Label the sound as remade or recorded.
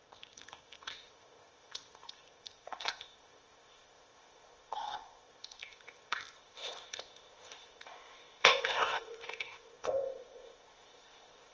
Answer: remade